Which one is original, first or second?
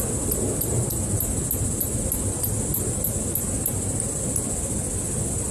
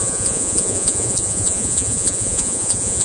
first